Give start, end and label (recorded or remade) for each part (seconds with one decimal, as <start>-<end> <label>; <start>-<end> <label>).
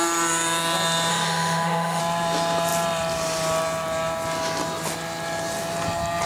0.0-1.1 recorded; 1.1-2.0 remade; 2.0-6.3 recorded